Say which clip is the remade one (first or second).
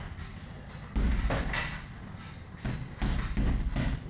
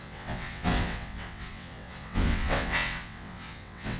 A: second